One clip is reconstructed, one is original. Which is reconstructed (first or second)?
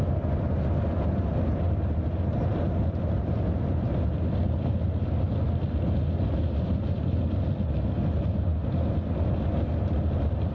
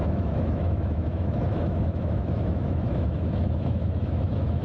second